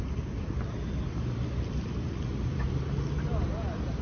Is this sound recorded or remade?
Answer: remade